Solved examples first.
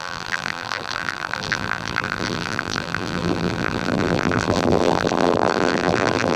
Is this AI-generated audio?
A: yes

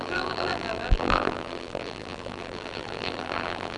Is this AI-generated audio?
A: yes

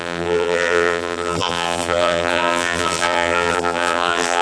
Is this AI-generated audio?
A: yes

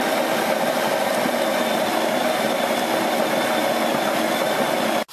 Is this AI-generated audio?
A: no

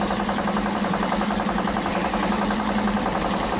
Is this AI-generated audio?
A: yes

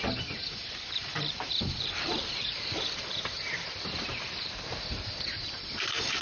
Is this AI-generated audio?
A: yes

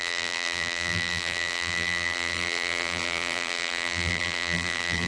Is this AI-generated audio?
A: yes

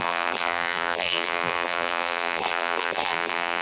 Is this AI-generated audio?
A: yes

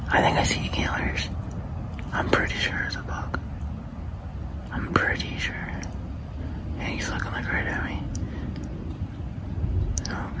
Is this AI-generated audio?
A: no